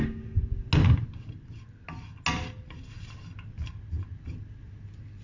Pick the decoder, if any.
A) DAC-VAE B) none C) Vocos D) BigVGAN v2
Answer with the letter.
B